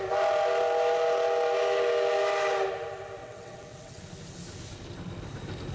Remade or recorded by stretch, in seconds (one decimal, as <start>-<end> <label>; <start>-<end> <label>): 0.0-3.2 recorded; 3.2-4.0 remade; 4.0-5.7 recorded